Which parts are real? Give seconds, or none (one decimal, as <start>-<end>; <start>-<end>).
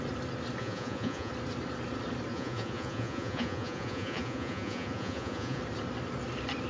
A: 0.0-0.6; 1.3-2.3; 5.6-6.7